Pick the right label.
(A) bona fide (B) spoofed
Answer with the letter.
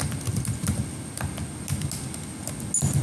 A